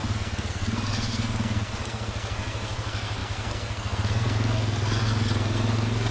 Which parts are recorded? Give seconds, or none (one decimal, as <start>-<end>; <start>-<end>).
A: none